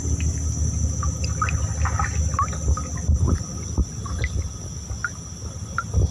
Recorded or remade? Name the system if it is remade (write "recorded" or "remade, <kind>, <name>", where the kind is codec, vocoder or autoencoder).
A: recorded